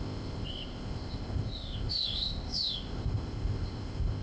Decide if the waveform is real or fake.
fake